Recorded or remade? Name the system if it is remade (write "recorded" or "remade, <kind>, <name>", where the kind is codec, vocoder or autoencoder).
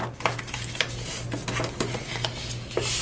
recorded